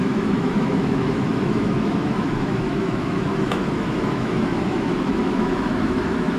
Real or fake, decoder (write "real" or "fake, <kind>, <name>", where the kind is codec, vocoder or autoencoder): fake, autoencoder, DAC-VAE